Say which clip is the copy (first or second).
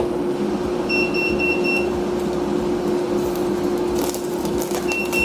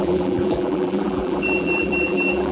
second